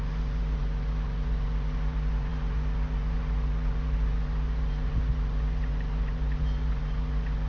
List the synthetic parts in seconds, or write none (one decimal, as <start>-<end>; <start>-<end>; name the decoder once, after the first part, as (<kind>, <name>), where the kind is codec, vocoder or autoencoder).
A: 0.0-7.5 (vocoder, Vocos)